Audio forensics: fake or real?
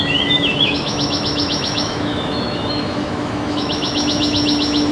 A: fake